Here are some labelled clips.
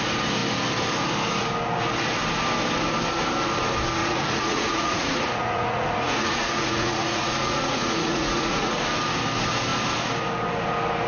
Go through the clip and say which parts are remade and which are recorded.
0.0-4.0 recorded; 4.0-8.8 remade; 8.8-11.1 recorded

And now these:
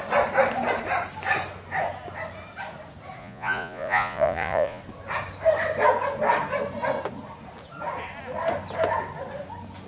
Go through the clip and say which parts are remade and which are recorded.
0.0-3.2 recorded; 3.2-4.8 remade; 4.8-9.9 recorded

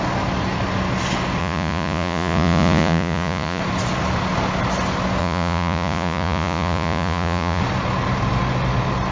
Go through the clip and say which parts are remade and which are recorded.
0.0-1.4 recorded; 1.4-3.6 remade; 3.6-5.2 recorded; 5.2-7.6 remade; 7.6-9.1 recorded

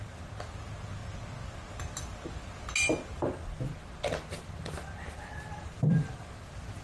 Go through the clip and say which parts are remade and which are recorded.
0.0-5.5 recorded; 5.5-6.1 remade; 6.1-6.8 recorded

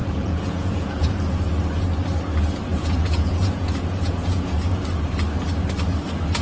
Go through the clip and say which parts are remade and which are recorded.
0.0-1.1 remade; 1.1-2.7 recorded; 2.7-4.8 remade; 4.8-6.4 recorded

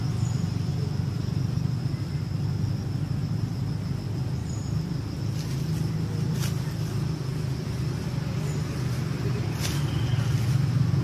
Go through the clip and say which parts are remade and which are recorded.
0.0-0.7 remade; 0.7-2.7 recorded; 2.7-11.0 remade